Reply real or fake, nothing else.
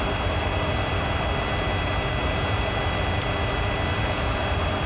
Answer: real